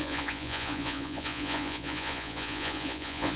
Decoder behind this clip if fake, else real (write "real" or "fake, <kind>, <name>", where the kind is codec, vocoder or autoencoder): fake, vocoder, Vocos